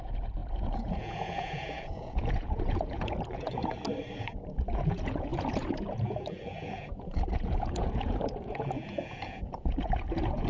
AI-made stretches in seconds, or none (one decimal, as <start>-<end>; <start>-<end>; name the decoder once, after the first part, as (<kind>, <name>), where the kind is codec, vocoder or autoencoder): 0.0-3.6 (vocoder, Vocos); 4.2-10.5